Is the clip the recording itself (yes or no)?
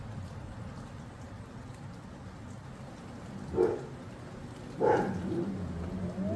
yes